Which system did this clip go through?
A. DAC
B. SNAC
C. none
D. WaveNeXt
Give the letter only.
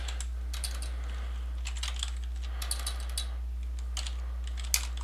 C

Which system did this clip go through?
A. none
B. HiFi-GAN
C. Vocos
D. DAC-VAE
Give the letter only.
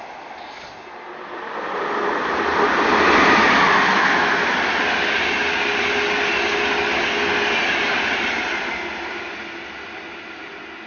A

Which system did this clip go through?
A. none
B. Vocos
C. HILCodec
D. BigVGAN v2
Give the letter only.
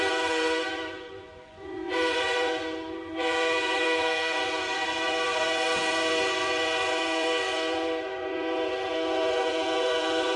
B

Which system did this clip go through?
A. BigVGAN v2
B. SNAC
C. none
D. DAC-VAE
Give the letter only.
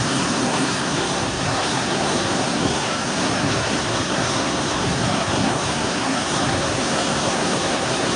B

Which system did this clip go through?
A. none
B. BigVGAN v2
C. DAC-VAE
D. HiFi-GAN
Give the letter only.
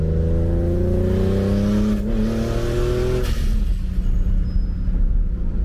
A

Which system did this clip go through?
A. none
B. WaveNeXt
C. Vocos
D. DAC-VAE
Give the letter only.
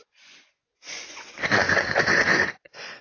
C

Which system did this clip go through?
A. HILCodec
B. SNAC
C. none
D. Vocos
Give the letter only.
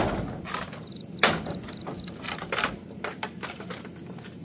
C